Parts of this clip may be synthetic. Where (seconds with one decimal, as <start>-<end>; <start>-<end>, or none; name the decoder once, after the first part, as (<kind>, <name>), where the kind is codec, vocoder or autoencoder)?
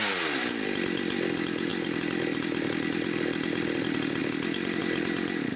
none